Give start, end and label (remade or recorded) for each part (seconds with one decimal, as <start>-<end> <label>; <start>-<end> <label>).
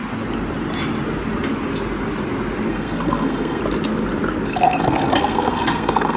0.0-2.7 recorded; 2.7-3.6 remade; 3.6-4.5 recorded; 4.5-6.2 remade